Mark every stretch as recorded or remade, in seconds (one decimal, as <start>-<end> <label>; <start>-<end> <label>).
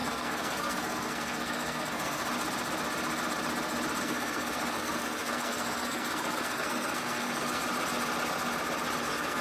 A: 0.0-2.2 remade; 2.2-4.0 recorded; 4.0-7.6 remade; 7.6-9.0 recorded; 9.0-9.4 remade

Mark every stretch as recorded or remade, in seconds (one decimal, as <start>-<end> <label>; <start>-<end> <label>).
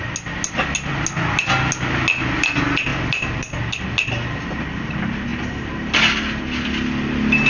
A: 0.0-7.5 recorded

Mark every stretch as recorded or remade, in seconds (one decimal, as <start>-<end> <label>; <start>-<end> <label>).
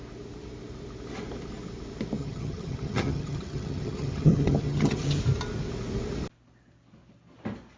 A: 0.0-2.2 recorded; 2.2-5.2 remade; 5.2-7.8 recorded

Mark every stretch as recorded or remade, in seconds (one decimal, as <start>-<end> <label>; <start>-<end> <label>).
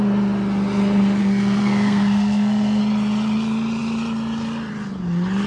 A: 0.0-1.2 recorded; 1.2-2.8 remade; 2.8-5.5 recorded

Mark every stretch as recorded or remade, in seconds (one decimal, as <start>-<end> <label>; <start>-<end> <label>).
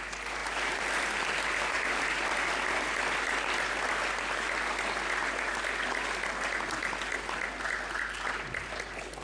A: 0.0-0.4 recorded; 0.4-2.0 remade; 2.0-9.2 recorded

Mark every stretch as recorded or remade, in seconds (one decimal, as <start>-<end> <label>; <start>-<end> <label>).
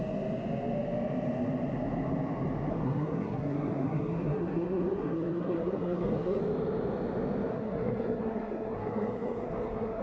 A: 0.0-2.7 recorded; 2.7-6.4 remade; 6.4-7.5 recorded; 7.5-10.0 remade